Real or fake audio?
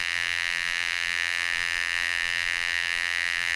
fake